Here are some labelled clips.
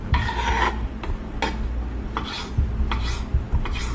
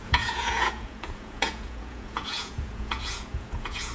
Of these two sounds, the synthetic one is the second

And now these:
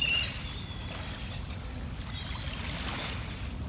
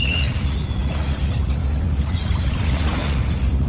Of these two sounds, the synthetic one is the second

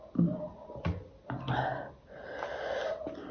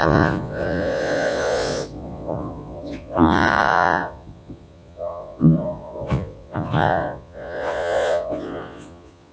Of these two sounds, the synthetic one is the second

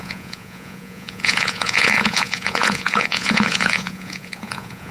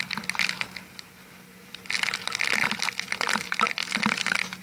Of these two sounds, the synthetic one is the first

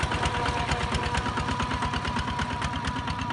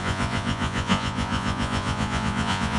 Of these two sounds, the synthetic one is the second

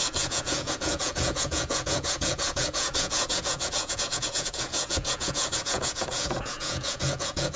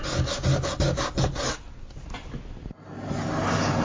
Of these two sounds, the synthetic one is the first